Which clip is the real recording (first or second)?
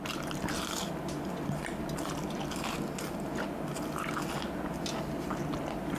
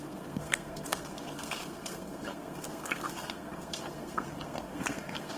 first